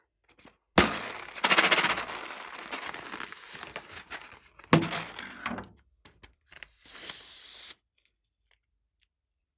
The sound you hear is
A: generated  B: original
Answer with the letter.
B